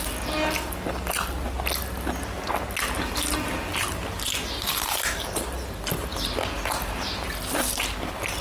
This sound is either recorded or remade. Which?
recorded